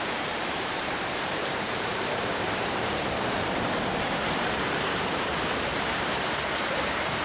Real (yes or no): no